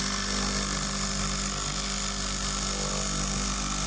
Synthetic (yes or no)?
no